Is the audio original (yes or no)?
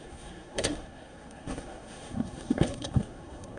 no